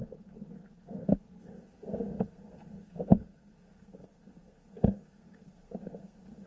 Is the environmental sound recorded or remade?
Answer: remade